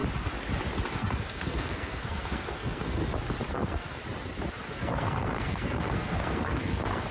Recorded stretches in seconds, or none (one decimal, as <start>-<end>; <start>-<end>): 0.0-0.9; 3.0-3.5; 4.0-4.7